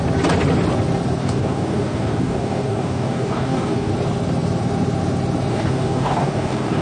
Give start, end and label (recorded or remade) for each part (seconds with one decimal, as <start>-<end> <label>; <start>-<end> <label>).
0.0-1.2 recorded; 1.2-3.9 remade; 3.9-5.5 recorded; 5.5-6.8 remade